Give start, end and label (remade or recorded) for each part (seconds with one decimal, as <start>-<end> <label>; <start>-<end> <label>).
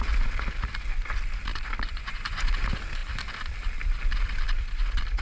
0.0-1.5 recorded; 1.5-2.5 remade; 2.5-5.2 recorded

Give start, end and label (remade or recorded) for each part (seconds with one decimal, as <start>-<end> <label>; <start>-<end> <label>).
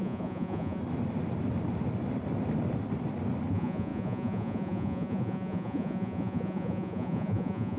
0.0-0.8 remade; 0.8-3.5 recorded; 3.5-7.8 remade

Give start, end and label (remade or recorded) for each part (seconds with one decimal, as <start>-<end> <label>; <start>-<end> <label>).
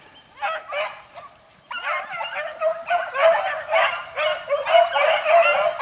0.0-5.8 recorded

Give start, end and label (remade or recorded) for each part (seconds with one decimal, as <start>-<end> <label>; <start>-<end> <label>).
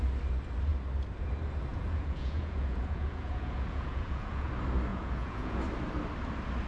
0.0-1.7 recorded; 1.7-4.5 remade; 4.5-4.9 recorded; 4.9-5.6 remade; 5.6-6.7 recorded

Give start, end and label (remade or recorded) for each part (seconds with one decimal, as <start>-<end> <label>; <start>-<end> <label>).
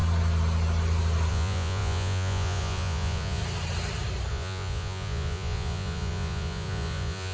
0.0-1.3 recorded; 1.3-3.4 remade; 3.4-4.3 recorded; 4.3-7.3 remade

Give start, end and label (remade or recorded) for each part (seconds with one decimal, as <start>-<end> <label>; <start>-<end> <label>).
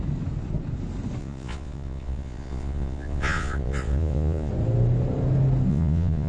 0.0-1.2 recorded; 1.2-4.5 remade; 4.5-5.7 recorded; 5.7-6.3 remade